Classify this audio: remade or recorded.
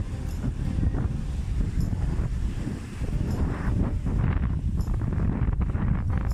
remade